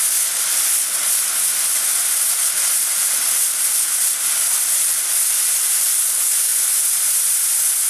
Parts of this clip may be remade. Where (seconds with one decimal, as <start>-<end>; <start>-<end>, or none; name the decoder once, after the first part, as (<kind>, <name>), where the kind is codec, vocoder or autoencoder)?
none